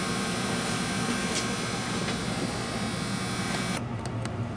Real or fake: real